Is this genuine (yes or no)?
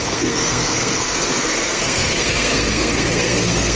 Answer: no